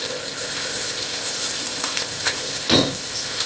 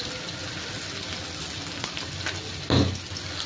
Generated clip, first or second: first